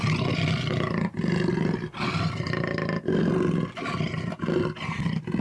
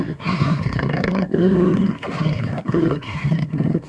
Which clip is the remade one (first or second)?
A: second